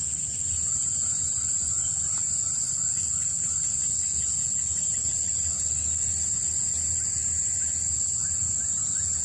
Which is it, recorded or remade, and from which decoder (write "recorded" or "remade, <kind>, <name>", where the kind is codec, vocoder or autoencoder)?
recorded